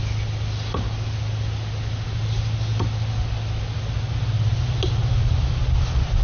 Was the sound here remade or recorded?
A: recorded